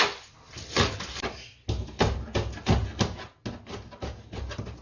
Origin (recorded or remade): recorded